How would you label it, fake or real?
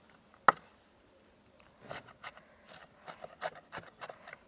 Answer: real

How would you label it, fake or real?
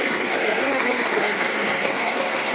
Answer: fake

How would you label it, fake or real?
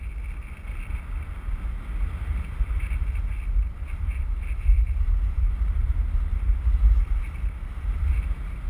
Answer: real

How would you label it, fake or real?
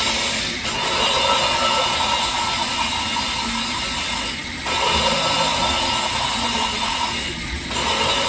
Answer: real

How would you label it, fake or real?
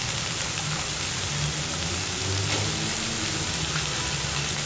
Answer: real